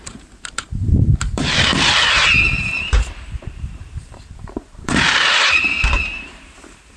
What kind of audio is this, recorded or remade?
remade